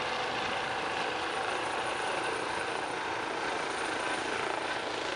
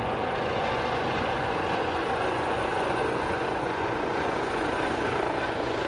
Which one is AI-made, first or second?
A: second